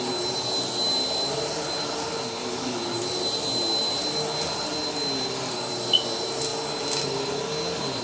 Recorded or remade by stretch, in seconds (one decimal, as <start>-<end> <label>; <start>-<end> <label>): 0.0-8.0 recorded